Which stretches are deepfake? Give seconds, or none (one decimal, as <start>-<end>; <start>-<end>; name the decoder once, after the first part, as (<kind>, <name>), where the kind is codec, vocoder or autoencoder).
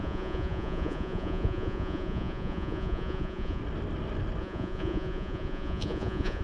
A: 0.0-3.6 (vocoder, Vocos); 4.4-6.4